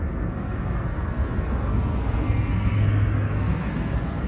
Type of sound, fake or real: fake